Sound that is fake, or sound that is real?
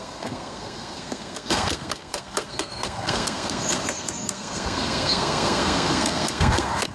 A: fake